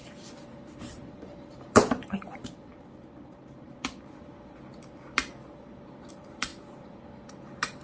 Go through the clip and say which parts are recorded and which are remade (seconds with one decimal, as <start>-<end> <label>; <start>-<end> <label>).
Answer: 0.0-2.7 remade; 2.7-3.3 recorded; 3.3-3.8 remade; 3.8-6.1 recorded; 6.1-6.5 remade; 6.5-7.3 recorded; 7.3-7.8 remade